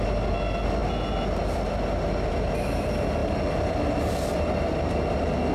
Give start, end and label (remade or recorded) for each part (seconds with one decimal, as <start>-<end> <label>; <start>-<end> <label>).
0.0-5.5 recorded